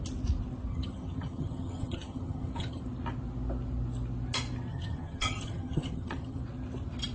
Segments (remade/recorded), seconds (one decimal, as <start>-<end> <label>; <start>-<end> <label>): 0.0-0.7 recorded; 0.7-2.8 remade; 2.8-4.7 recorded; 4.7-6.4 remade; 6.4-7.1 recorded